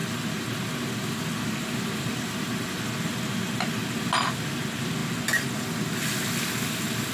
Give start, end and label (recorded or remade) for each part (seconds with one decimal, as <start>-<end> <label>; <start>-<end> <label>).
0.0-7.1 recorded